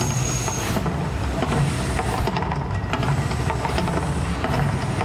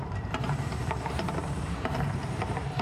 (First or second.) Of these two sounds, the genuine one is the first